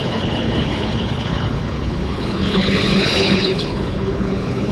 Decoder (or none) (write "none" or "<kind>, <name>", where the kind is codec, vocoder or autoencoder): codec, HILCodec